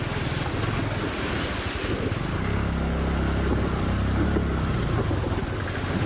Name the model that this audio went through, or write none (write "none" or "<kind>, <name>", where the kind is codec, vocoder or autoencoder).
none